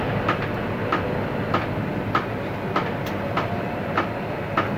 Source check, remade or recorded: recorded